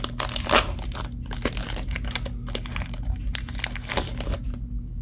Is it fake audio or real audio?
real